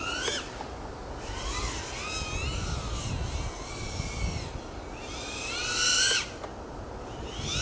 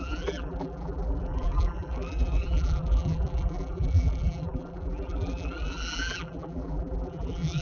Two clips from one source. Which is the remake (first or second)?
second